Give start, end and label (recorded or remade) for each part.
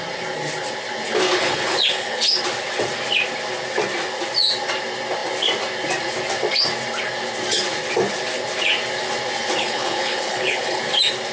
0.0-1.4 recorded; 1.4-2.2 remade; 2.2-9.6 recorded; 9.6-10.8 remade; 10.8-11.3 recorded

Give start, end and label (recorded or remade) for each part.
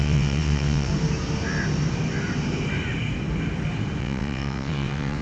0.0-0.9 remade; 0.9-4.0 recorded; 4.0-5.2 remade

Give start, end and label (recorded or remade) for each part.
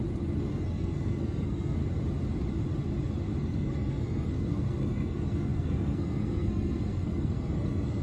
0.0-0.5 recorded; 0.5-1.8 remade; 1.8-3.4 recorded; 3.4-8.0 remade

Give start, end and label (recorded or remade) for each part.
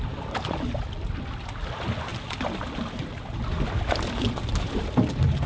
0.0-5.5 recorded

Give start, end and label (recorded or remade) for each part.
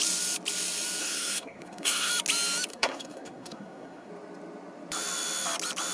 0.0-1.0 recorded; 1.0-2.1 remade; 2.1-2.7 recorded; 2.7-4.1 remade; 4.1-5.9 recorded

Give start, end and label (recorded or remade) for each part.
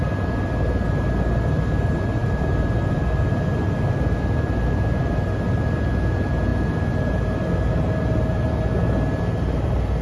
0.0-10.0 recorded